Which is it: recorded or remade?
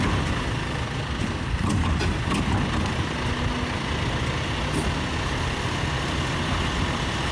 recorded